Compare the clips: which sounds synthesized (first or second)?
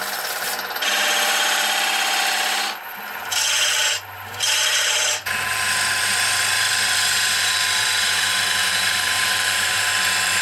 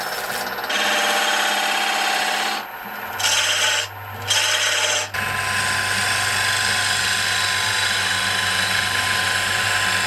first